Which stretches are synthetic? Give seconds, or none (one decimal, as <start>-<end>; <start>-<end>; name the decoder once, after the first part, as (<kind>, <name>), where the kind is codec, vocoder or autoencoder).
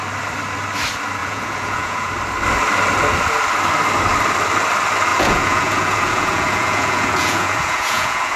1.2-2.1 (vocoder, Vocos); 5.1-8.4